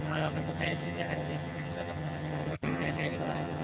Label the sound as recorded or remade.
remade